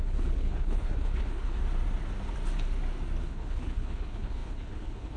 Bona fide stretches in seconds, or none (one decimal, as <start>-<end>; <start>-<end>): 1.6-3.2